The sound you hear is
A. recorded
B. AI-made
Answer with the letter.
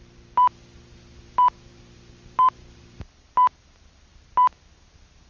A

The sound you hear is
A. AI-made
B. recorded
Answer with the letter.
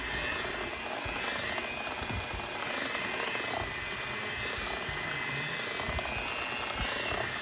B